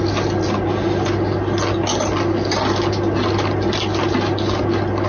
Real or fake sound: real